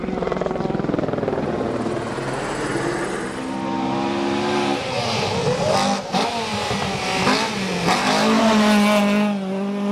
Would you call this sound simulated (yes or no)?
no